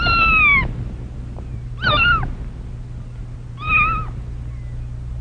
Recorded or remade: recorded